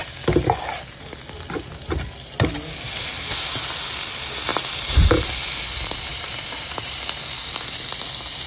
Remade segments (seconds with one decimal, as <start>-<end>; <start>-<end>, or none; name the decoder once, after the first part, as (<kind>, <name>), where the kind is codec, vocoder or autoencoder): 4.5-5.3 (vocoder, BigVGAN v2); 6.1-7.0